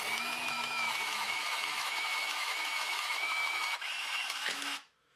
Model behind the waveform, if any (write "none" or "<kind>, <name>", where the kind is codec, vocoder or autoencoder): autoencoder, DAC-VAE